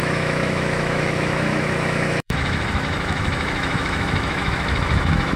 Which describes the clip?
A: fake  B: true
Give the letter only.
A